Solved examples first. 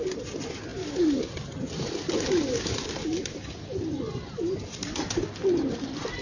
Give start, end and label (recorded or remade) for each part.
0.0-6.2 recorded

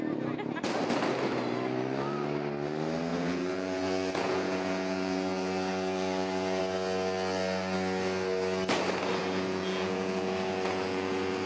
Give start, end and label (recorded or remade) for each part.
0.0-3.1 recorded; 3.1-6.6 remade; 6.6-9.2 recorded; 9.2-11.5 remade

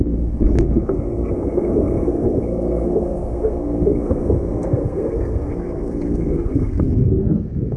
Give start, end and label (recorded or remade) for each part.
0.0-7.8 remade

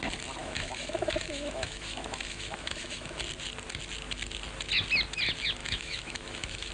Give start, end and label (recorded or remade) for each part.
0.0-0.4 recorded; 0.4-3.2 remade; 3.2-5.6 recorded; 5.6-6.7 remade

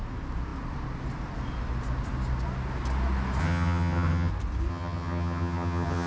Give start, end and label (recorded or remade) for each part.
0.0-3.4 recorded; 3.4-4.3 remade; 4.3-4.7 recorded; 4.7-6.1 remade

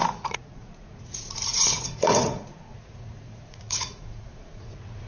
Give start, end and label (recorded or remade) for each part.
0.0-5.1 remade